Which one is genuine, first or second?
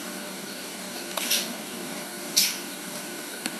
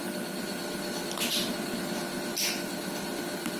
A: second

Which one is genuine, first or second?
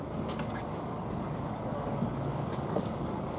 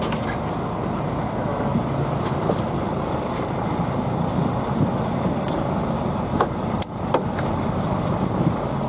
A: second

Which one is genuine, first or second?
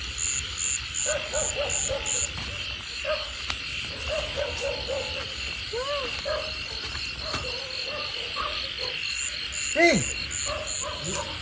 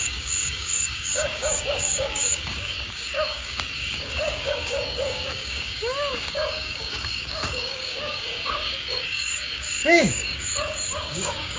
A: first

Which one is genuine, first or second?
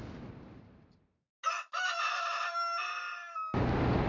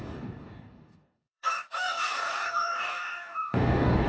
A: first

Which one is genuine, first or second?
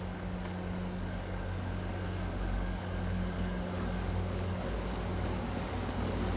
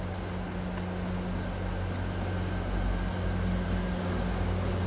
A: second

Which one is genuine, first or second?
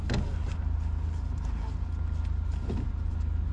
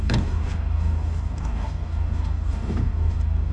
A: first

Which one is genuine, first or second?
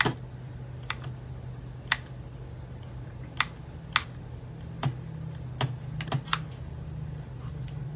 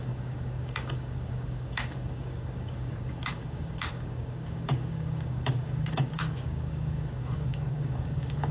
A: first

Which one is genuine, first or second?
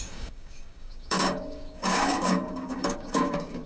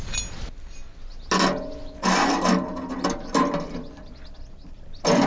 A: second